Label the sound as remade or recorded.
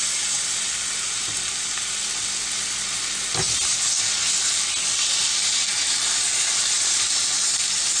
recorded